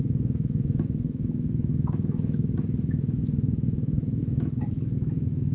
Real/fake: fake